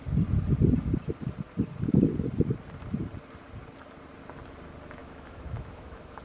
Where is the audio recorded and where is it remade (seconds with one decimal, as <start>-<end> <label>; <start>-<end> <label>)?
0.0-5.0 recorded; 5.0-6.2 remade